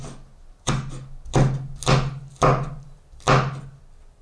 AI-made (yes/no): no